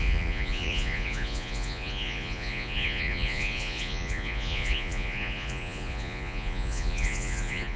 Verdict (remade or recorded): remade